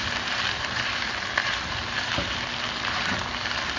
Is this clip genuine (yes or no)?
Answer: yes